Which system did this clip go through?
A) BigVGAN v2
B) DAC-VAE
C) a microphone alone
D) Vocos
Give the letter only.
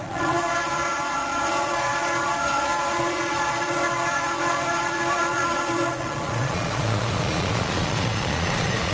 D